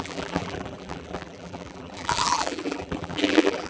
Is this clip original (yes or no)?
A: no